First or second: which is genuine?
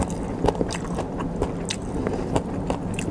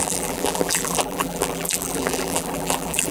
first